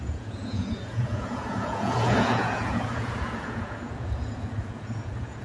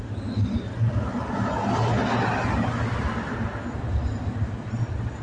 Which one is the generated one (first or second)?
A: first